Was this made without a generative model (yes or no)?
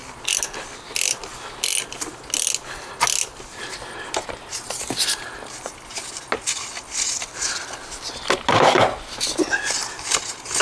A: yes